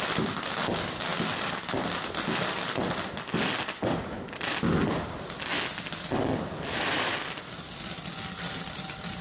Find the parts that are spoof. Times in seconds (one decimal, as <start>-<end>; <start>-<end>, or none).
none